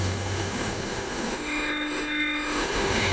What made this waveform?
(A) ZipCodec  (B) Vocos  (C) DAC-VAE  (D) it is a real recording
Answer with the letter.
C